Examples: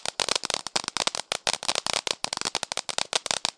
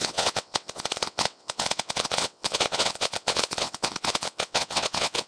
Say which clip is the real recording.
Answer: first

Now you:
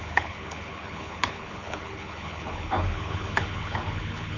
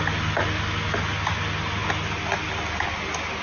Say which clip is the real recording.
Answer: second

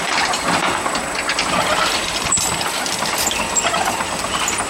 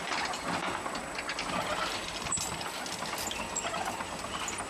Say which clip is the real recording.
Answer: second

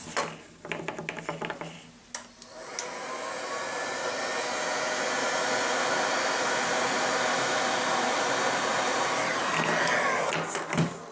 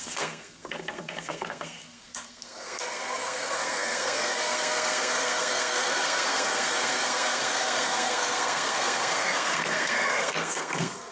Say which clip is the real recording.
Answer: first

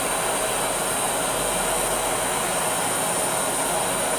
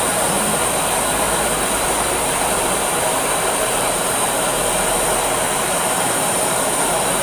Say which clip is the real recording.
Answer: first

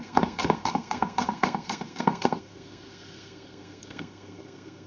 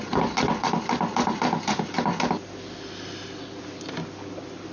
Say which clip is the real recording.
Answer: second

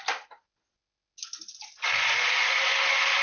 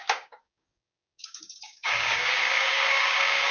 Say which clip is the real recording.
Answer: first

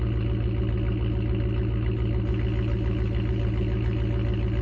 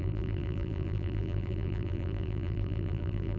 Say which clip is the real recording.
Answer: first